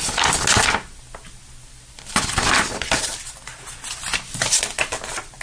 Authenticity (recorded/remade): recorded